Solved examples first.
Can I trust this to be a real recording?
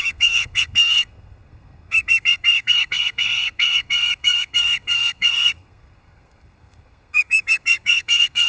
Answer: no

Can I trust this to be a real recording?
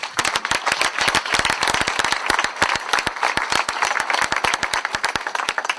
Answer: yes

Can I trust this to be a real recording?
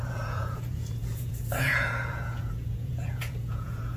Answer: no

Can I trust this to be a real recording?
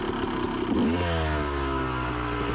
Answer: yes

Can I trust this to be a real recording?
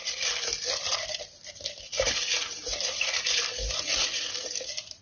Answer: yes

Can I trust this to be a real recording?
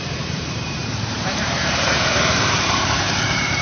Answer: no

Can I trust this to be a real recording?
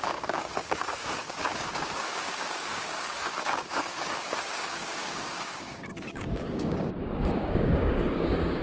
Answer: no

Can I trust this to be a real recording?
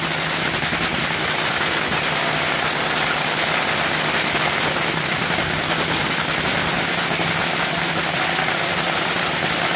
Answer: yes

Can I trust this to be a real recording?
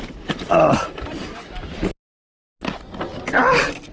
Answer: yes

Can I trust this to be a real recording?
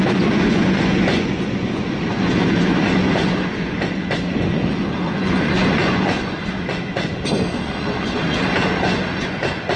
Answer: no